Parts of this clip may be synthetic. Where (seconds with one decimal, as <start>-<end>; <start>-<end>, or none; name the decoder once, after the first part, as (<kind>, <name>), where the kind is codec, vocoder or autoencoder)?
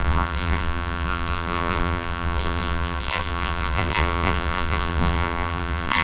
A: 0.0-6.0 (vocoder, BigVGAN v2)